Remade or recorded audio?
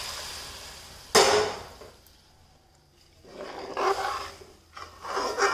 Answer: recorded